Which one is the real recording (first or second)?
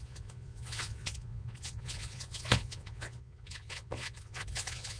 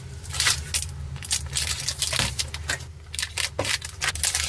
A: second